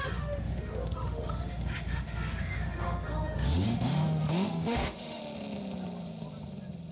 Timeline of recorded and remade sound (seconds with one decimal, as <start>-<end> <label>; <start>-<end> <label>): 0.0-5.2 remade; 5.2-6.9 recorded